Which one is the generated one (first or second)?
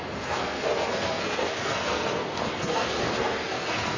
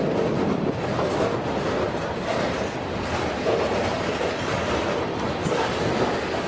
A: first